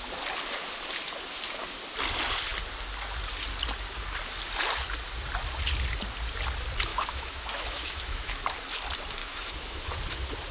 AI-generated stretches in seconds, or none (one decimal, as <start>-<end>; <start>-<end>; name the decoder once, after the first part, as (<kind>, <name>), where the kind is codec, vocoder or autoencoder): 6.9-8.4 (autoencoder, DAC-VAE); 9.2-9.8